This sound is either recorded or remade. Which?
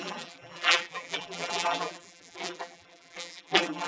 remade